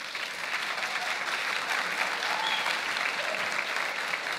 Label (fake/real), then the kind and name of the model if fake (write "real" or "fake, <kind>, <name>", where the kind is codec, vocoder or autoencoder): real